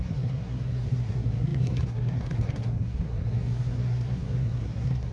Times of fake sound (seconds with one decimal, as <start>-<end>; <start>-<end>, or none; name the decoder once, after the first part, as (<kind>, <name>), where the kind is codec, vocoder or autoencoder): 0.0-5.1 (codec, SNAC)

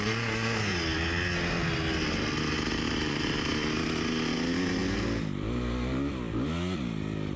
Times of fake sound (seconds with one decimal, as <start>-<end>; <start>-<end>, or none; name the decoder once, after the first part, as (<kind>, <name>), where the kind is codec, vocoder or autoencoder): none